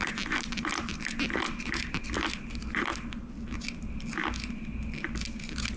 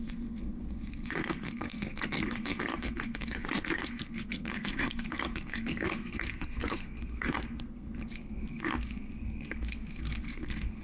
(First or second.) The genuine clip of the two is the first